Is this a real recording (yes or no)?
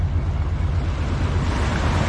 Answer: yes